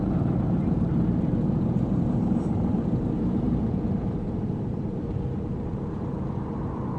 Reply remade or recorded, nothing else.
remade